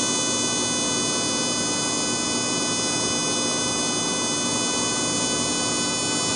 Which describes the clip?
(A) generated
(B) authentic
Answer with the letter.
B